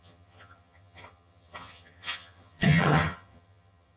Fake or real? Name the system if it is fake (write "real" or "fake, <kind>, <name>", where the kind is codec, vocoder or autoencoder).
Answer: fake, vocoder, HiFi-GAN